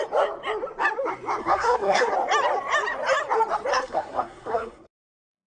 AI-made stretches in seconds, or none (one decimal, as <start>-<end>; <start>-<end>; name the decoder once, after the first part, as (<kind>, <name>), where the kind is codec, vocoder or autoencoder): 1.4-2.1 (codec, SNAC); 3.7-5.5